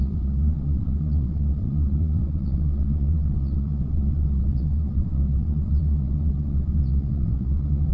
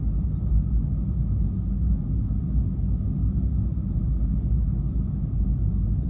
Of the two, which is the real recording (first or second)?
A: second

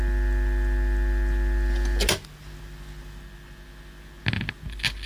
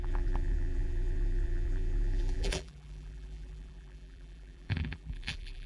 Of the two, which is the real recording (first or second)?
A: first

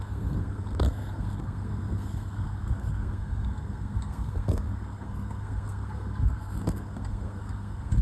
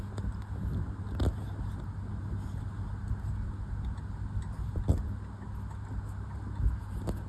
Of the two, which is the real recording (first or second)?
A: second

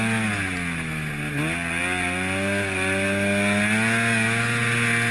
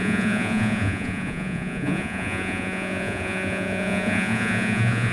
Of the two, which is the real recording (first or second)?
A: first